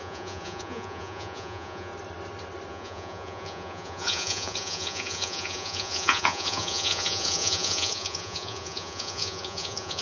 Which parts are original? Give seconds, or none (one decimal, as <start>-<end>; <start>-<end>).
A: 1.9-2.7